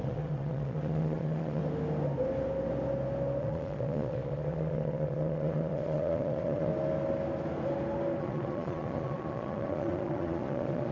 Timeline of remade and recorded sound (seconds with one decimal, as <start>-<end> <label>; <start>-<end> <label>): 0.0-1.6 remade; 1.6-3.4 recorded; 3.4-6.7 remade; 6.7-8.2 recorded; 8.2-10.9 remade